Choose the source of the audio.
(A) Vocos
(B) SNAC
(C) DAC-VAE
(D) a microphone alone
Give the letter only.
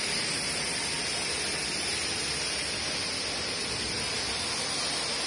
D